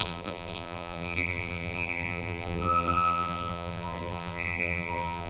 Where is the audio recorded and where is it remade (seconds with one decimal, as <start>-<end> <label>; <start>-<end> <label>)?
0.0-5.3 remade

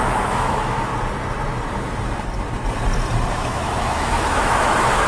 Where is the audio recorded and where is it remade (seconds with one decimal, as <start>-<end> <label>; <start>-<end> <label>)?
0.0-0.9 remade; 0.9-3.3 recorded; 3.3-5.1 remade

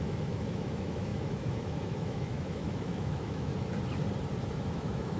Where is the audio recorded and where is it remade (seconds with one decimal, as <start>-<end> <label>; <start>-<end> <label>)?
0.0-3.5 remade; 3.5-4.4 recorded; 4.4-5.2 remade

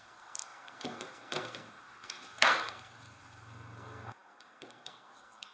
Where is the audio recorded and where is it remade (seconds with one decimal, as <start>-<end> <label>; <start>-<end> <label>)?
0.0-5.5 remade

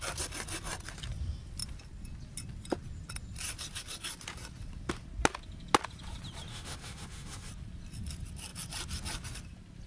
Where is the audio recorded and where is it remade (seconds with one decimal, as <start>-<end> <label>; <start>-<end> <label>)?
0.0-6.5 recorded; 6.5-7.5 remade; 7.5-9.9 recorded

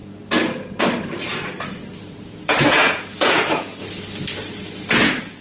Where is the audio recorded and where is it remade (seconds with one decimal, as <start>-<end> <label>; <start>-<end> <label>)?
0.0-2.0 recorded; 2.0-3.8 remade; 3.8-4.9 recorded; 4.9-5.4 remade

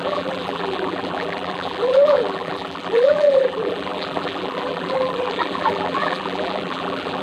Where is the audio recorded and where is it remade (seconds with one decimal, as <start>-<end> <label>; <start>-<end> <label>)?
0.0-7.2 remade